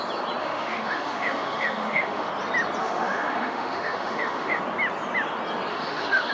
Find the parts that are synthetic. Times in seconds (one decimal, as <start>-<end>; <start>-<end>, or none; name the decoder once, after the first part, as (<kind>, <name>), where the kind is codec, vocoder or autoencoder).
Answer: 0.4-2.3 (autoencoder, DAC-VAE); 2.8-4.6; 5.7-6.3